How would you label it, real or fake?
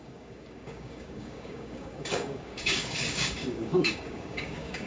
fake